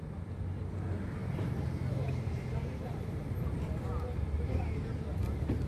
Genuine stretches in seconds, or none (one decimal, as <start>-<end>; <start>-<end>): 0.0-1.2; 4.6-5.7